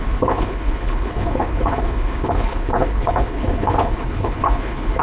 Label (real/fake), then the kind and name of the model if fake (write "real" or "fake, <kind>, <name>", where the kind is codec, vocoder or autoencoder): fake, codec, HILCodec